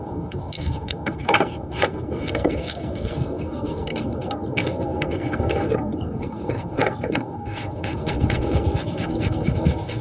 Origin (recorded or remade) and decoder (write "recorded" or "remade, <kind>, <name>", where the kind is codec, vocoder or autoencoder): remade, codec, SNAC